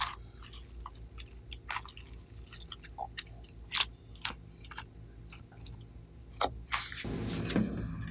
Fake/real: real